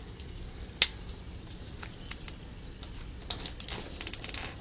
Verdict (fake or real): real